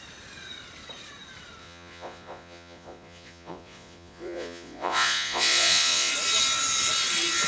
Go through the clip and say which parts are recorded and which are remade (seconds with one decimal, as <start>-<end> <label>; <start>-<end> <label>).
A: 0.0-1.6 recorded; 1.6-6.1 remade; 6.1-7.5 recorded